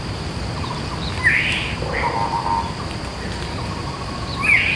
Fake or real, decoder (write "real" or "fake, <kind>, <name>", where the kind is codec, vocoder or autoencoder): real